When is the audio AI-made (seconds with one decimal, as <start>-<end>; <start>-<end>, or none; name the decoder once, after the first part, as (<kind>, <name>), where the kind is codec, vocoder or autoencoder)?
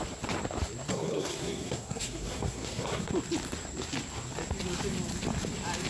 0.9-3.1 (codec, SNAC)